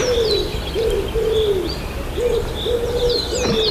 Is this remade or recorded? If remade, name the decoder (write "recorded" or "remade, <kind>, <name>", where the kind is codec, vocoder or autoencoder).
recorded